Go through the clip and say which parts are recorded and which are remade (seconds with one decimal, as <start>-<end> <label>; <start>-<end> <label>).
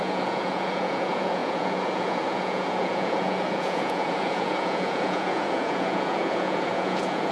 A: 0.0-7.3 remade